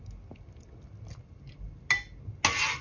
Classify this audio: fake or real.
real